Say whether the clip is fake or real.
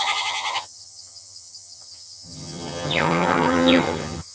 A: fake